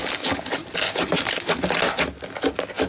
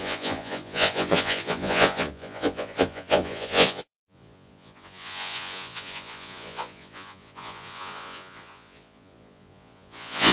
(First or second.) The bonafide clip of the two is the first